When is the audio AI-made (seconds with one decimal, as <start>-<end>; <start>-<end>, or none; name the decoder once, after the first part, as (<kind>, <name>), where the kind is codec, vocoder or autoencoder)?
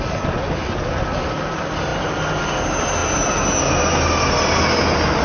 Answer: none